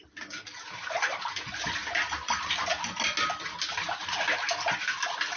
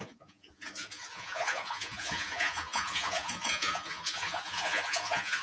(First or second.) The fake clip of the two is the second